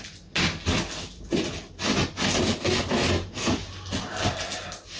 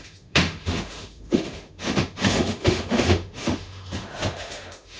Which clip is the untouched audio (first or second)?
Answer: first